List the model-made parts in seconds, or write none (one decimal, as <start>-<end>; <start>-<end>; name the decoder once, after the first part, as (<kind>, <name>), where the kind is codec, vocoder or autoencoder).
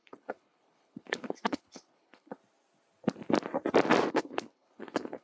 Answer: 0.0-2.4 (codec, HILCodec); 4.1-5.2